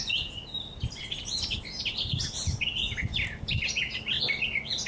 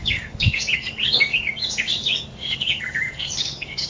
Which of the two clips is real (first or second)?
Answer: first